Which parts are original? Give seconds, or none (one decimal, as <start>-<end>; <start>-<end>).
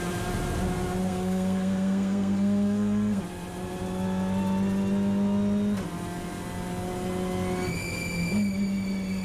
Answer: 0.0-1.1; 3.2-9.2